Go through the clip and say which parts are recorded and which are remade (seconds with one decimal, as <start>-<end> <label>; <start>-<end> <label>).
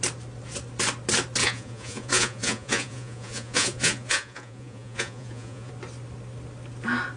0.0-1.4 recorded; 1.4-5.7 remade; 5.7-7.2 recorded